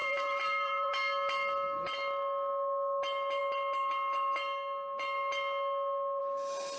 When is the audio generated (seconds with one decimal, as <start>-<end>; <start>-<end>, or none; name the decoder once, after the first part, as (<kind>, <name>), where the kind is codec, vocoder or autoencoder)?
0.0-0.9 (vocoder, BigVGAN v2)